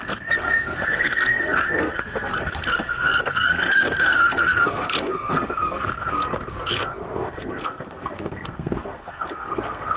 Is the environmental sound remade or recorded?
remade